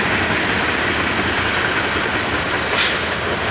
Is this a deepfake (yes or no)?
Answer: no